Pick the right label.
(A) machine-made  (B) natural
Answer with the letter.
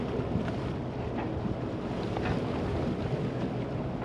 A